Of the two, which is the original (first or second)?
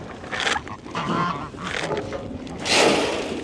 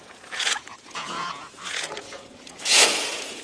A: first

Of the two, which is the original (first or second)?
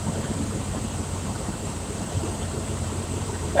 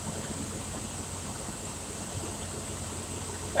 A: second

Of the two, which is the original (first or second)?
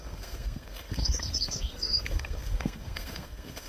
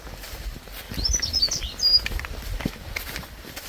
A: second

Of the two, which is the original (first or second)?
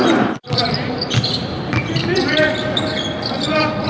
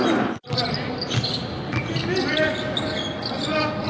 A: second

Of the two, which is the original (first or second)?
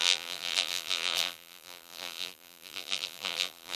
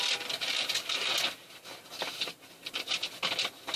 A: second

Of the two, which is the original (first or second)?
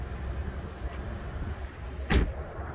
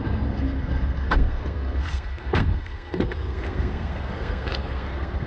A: first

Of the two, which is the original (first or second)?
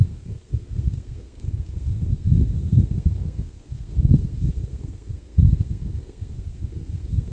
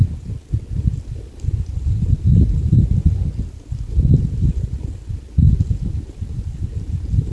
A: second